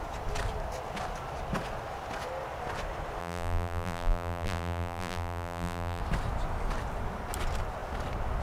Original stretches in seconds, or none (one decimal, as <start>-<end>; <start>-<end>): 0.0-3.2; 6.0-8.4